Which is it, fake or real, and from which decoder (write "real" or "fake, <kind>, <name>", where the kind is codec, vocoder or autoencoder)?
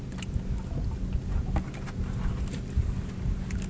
real